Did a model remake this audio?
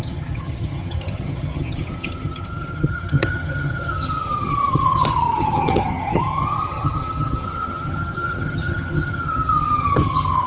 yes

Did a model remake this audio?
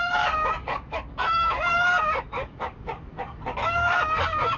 yes